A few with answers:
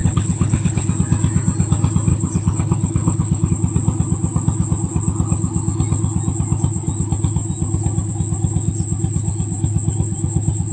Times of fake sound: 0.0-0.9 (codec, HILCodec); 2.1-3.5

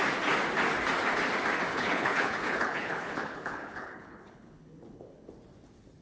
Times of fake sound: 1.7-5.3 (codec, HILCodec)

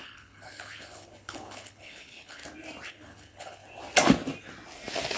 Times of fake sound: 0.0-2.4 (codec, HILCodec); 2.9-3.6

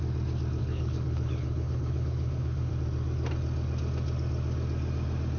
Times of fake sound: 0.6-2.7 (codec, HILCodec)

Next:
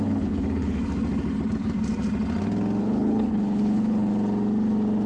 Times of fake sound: 0.0-0.8 (codec, HILCodec); 2.8-4.1

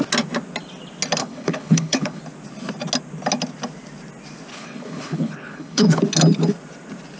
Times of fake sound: 1.2-2.2 (codec, HILCodec); 4.5-6.0

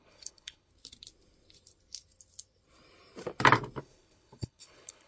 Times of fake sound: 0.0-0.7 (codec, HILCodec); 3.8-5.1

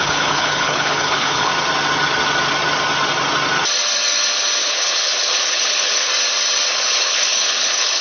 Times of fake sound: 0.0-1.5 (codec, HILCodec); 4.6-6.1; 6.7-8.0